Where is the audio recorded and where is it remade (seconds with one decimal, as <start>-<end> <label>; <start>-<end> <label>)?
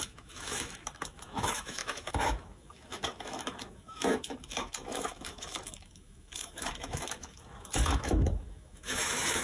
0.0-9.4 remade